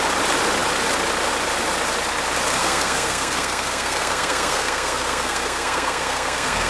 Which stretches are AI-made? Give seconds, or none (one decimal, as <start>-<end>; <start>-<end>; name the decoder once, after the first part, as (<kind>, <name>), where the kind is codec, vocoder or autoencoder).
2.6-6.7 (codec, SNAC)